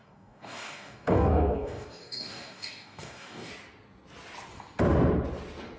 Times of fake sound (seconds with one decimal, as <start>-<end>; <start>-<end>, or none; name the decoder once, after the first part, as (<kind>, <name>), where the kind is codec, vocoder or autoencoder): 0.0-3.5 (codec, DAC)